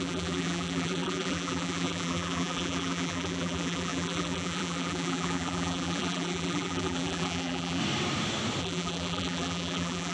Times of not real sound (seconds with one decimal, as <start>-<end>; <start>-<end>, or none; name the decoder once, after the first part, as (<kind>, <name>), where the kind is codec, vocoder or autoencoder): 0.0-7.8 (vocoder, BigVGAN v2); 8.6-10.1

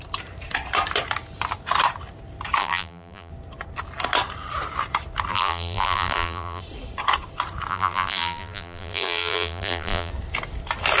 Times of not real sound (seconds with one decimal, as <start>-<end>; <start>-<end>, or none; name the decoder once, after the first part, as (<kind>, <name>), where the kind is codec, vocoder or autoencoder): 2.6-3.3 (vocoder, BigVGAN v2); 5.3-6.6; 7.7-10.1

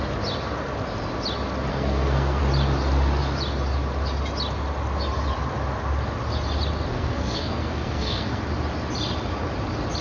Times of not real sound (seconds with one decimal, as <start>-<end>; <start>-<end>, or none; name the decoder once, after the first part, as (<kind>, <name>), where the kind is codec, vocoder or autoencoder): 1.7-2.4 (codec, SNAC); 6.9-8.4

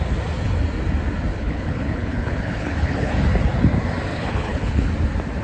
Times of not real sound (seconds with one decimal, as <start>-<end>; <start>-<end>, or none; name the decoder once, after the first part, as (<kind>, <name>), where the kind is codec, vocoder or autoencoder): 1.3-3.1 (codec, HILCodec); 4.1-4.9

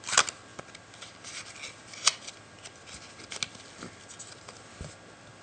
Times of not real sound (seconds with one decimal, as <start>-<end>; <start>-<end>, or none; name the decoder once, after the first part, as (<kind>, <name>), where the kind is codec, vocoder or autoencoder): none

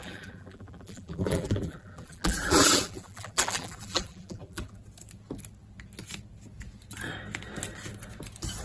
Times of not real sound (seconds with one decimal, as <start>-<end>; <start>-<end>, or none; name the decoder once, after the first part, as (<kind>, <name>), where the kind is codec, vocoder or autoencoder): 0.0-4.8 (vocoder, BigVGAN v2)